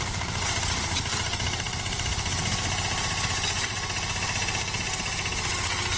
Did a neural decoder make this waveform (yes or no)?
no